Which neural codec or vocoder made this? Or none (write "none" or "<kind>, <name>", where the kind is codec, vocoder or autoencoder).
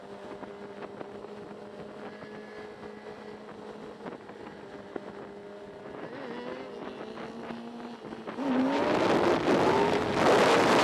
none